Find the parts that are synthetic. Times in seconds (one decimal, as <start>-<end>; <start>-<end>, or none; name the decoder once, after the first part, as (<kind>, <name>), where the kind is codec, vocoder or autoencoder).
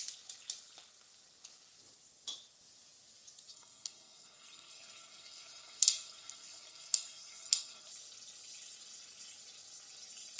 3.5-7.9 (codec, SNAC)